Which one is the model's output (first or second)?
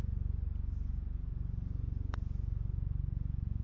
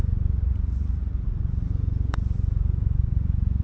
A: second